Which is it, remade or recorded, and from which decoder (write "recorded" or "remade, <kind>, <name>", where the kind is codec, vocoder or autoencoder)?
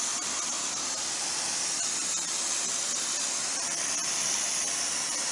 recorded